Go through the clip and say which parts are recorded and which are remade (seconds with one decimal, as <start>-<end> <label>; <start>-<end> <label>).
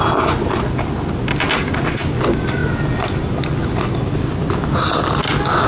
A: 0.0-5.7 recorded